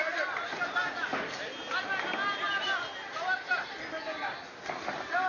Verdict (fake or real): real